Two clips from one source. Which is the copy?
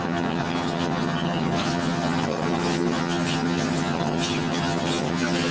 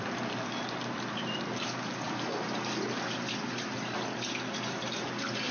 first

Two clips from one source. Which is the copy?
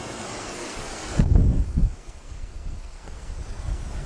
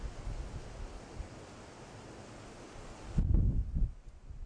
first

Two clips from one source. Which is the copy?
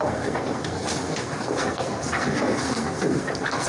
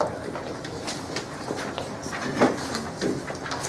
first